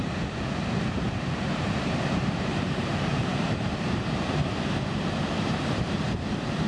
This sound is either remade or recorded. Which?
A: remade